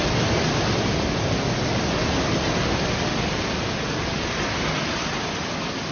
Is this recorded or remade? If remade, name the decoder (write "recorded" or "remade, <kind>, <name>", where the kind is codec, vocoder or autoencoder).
recorded